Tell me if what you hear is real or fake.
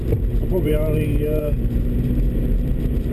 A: fake